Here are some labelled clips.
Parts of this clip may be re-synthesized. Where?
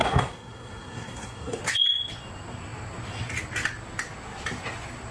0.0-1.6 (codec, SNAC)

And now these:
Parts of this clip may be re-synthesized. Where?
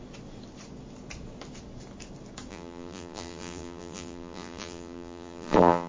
2.5-5.9 (vocoder, BigVGAN v2)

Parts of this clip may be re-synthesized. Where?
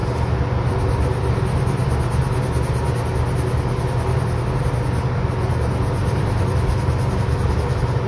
6.0-6.5 (vocoder, BigVGAN v2)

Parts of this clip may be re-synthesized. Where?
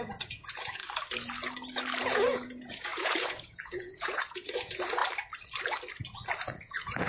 0.0-0.8 (vocoder, Vocos); 2.0-5.0; 6.4-7.1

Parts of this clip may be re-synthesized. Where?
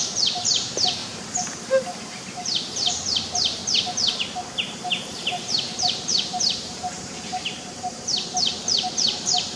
0.0-3.6 (vocoder, BigVGAN v2); 5.0-9.6